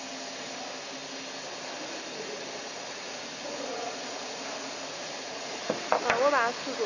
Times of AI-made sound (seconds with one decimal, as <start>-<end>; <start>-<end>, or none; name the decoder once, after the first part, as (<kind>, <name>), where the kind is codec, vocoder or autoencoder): 2.6-5.9 (vocoder, Vocos)